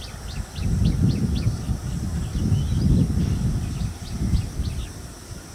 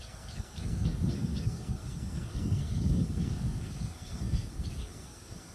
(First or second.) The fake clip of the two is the second